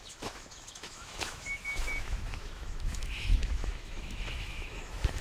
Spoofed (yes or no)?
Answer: yes